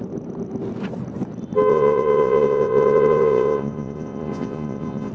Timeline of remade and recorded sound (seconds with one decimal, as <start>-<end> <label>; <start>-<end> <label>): 0.0-1.7 recorded; 1.7-5.1 remade

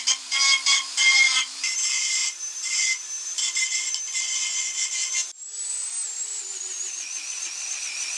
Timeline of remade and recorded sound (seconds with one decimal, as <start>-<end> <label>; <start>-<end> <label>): 0.0-8.2 recorded

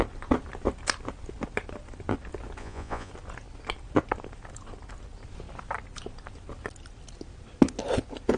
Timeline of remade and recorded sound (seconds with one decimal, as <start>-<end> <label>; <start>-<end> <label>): 0.0-2.6 recorded; 2.6-3.1 remade; 3.1-8.4 recorded

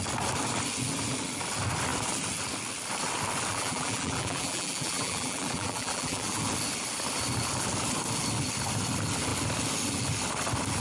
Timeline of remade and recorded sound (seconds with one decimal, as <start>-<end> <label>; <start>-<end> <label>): 0.0-3.5 recorded; 3.5-6.4 remade; 6.4-10.8 recorded

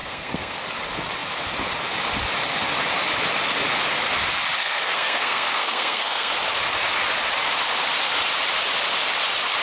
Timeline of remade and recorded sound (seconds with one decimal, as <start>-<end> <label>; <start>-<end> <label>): 0.0-0.6 remade; 0.6-4.6 recorded; 4.6-6.3 remade; 6.3-9.6 recorded

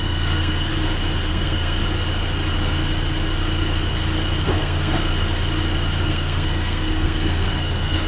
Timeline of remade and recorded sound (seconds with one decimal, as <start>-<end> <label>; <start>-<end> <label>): 0.0-0.7 remade; 0.7-1.3 recorded; 1.3-1.8 remade; 1.8-4.4 recorded; 4.4-5.1 remade; 5.1-6.1 recorded; 6.1-8.1 remade

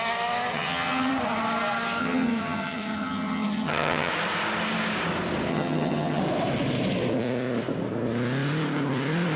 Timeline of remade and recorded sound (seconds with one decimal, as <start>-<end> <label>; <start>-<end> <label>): 0.0-0.5 recorded; 0.5-1.1 remade; 1.1-2.0 recorded; 2.0-4.1 remade; 4.1-5.5 recorded; 5.5-6.2 remade; 6.2-9.4 recorded